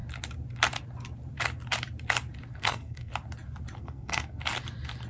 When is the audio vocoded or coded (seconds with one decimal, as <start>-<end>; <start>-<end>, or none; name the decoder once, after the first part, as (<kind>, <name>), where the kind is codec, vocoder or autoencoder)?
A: 2.5-3.1 (codec, SNAC); 3.8-4.4